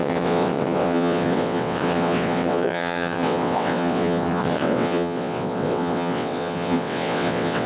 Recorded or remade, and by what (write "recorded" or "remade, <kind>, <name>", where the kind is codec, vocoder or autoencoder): remade, vocoder, WaveNeXt